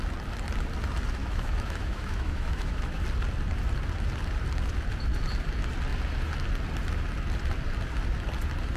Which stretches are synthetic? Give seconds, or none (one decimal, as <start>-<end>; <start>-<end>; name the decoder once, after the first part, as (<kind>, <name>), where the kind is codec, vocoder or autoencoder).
1.2-3.0 (autoencoder, DAC-VAE)